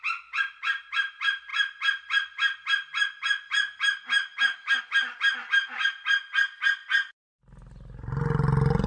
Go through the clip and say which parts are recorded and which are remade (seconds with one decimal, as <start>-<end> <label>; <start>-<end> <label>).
0.0-8.9 recorded